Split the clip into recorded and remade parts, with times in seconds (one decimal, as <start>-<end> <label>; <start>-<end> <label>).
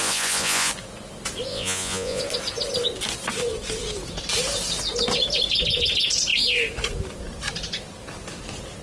0.0-0.7 remade; 0.7-1.5 recorded; 1.5-2.2 remade; 2.2-8.8 recorded